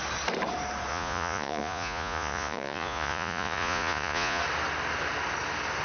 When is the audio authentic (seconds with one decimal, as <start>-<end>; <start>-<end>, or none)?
0.0-0.9; 4.4-5.8